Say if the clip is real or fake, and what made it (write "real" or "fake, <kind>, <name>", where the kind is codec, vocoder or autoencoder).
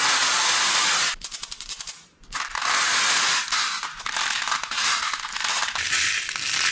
real